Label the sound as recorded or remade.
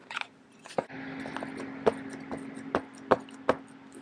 recorded